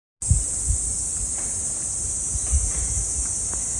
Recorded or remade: recorded